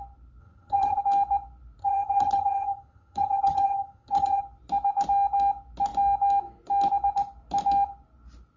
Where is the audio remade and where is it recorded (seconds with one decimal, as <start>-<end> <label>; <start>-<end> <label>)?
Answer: 0.0-0.4 recorded; 0.4-1.0 remade; 1.0-1.8 recorded; 1.8-4.4 remade; 4.4-8.6 recorded